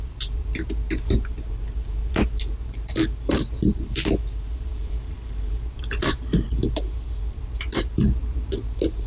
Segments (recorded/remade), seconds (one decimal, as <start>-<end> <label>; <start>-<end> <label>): 0.0-9.1 remade